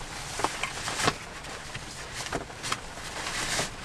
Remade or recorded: recorded